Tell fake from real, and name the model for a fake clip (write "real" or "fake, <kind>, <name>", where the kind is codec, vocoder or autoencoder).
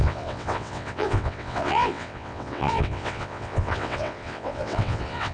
fake, vocoder, WaveNeXt